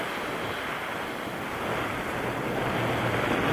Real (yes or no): yes